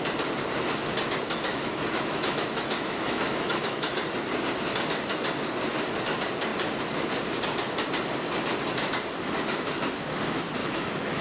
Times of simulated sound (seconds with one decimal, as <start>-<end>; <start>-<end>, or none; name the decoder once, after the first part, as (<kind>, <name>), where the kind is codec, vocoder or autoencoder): 1.5-4.0 (autoencoder, DAC-VAE); 10.6-11.2